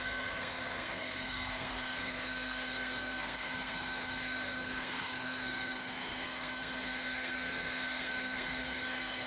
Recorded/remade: remade